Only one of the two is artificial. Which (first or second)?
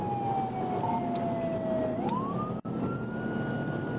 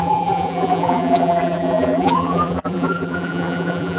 second